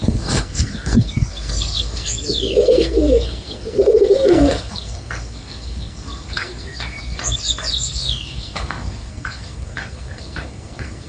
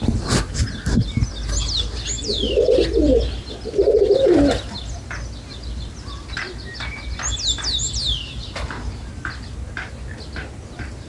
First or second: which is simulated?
first